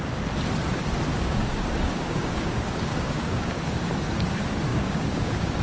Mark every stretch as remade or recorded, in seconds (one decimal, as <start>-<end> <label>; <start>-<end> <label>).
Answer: 0.0-1.1 recorded; 1.1-3.8 remade; 3.8-4.7 recorded; 4.7-5.6 remade